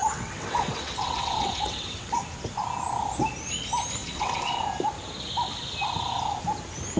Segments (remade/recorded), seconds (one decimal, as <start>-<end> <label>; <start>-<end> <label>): 0.0-2.2 remade; 2.2-4.0 recorded; 4.0-4.5 remade; 4.5-7.0 recorded